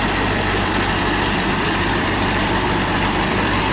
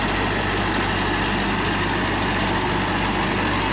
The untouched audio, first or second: second